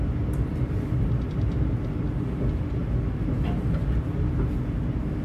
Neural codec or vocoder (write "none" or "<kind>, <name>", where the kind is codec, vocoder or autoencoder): none